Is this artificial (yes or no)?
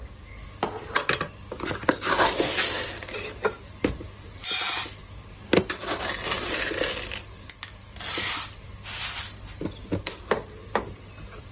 no